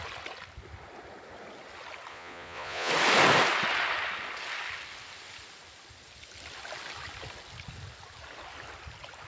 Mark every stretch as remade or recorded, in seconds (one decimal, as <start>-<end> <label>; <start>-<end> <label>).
0.0-2.1 recorded; 2.1-2.9 remade; 2.9-9.3 recorded